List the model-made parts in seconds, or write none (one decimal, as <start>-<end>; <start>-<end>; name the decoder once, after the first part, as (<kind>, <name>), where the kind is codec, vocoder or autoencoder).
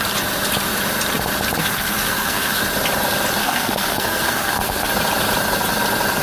1.6-2.6 (codec, SNAC); 3.4-4.9